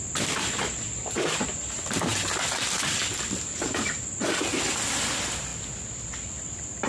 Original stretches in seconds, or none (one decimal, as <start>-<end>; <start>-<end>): 5.5-6.1